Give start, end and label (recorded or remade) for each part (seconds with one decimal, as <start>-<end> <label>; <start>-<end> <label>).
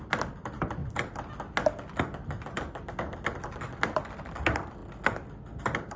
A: 0.0-0.8 remade; 0.8-3.6 recorded; 3.6-4.8 remade; 4.8-5.6 recorded; 5.6-6.0 remade